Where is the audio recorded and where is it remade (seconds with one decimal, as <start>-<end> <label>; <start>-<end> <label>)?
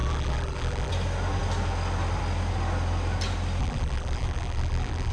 0.0-0.9 remade; 0.9-3.6 recorded; 3.6-5.1 remade